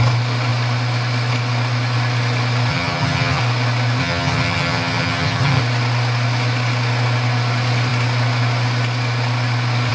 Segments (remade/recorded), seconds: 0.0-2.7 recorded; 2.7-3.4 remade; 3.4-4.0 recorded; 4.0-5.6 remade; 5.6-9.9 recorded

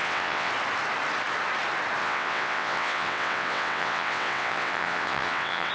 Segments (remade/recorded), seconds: 0.0-0.5 remade; 0.5-2.0 recorded; 2.0-5.7 remade

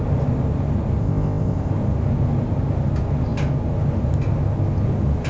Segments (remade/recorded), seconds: 0.0-1.0 recorded; 1.0-1.7 remade; 1.7-5.3 recorded

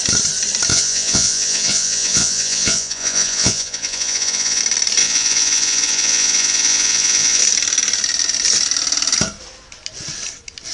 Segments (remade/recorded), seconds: 0.0-0.7 recorded; 0.7-4.6 remade; 4.6-5.0 recorded; 5.0-7.4 remade; 7.4-10.7 recorded

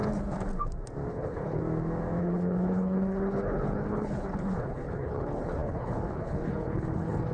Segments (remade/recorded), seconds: 0.0-1.1 recorded; 1.1-1.6 remade; 1.6-2.2 recorded; 2.2-7.3 remade